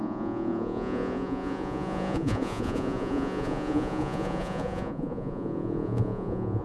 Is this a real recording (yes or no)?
no